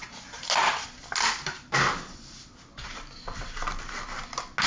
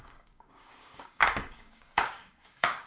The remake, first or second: second